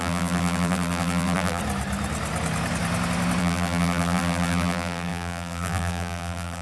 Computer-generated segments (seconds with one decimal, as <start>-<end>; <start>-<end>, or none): 0.0-1.6; 3.4-6.6